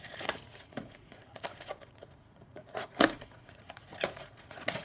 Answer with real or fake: fake